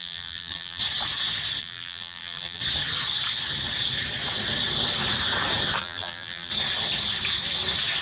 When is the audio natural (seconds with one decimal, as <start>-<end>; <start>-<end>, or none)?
0.8-1.6; 2.6-5.8; 6.5-8.0